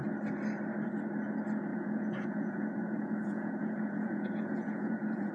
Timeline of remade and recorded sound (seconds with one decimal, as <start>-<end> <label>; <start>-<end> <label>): 0.0-1.7 recorded; 1.7-5.3 remade